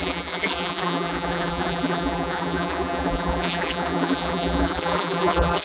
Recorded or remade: remade